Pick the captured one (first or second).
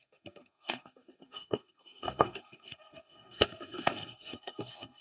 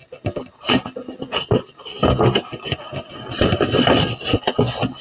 second